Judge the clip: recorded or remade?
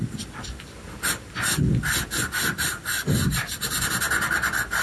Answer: recorded